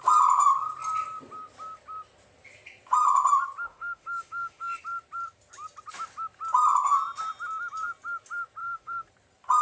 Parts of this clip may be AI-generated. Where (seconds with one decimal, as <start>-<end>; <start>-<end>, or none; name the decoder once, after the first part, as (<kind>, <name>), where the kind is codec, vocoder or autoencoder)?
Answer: 3.7-4.8 (autoencoder, DAC-VAE); 8.6-9.1